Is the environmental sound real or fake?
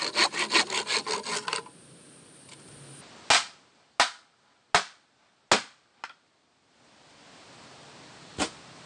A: real